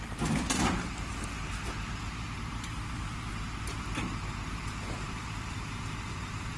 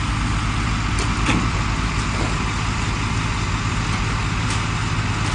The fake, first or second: first